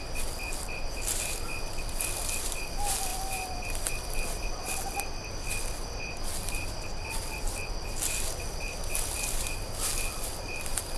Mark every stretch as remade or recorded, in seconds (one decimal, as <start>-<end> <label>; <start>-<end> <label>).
0.0-11.0 recorded